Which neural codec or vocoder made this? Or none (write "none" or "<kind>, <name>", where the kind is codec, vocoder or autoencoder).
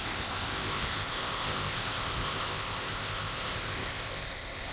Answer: codec, ZipCodec